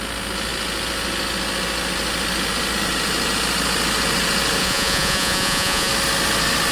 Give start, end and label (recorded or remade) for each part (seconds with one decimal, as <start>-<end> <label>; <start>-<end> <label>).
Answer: 0.0-4.6 recorded; 4.6-5.9 remade; 5.9-6.7 recorded

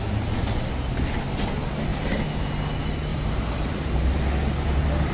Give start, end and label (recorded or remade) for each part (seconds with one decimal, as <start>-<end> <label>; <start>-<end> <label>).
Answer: 0.0-1.9 recorded; 1.9-2.4 remade; 2.4-3.1 recorded; 3.1-3.7 remade; 3.7-5.1 recorded

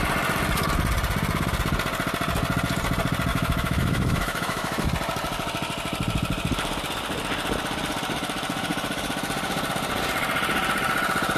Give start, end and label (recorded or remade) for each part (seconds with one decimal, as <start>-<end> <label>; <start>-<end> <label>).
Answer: 0.0-3.3 recorded; 3.3-4.9 remade; 4.9-11.4 recorded

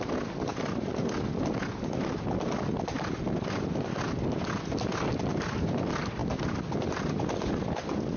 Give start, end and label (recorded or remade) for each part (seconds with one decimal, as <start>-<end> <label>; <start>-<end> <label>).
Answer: 0.0-8.2 recorded

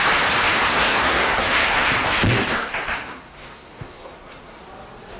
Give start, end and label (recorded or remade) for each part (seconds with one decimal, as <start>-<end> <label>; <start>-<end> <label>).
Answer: 0.0-0.7 recorded; 0.7-1.9 remade; 1.9-2.5 recorded; 2.5-4.6 remade; 4.6-5.2 recorded

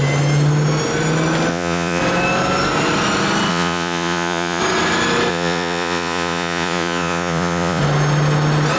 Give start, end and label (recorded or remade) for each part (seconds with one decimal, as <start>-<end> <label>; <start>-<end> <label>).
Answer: 0.0-1.5 recorded; 1.5-2.0 remade; 2.0-3.5 recorded; 3.5-4.6 remade; 4.6-5.3 recorded; 5.3-7.8 remade; 7.8-8.8 recorded

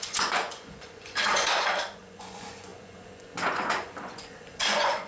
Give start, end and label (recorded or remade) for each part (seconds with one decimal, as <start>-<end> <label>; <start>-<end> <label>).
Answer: 0.0-5.1 remade

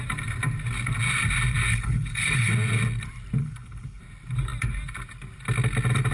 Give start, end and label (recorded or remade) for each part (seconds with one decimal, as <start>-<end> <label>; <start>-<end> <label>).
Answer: 0.0-1.7 recorded; 1.7-2.5 remade; 2.5-3.4 recorded; 3.4-4.0 remade; 4.0-6.1 recorded